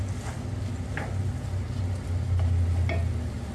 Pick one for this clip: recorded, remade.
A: recorded